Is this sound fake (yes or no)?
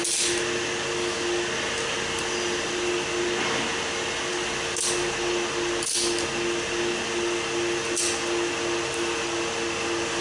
no